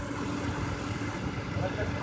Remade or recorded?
recorded